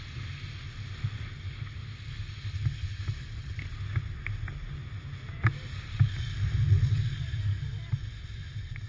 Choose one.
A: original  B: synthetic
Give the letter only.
A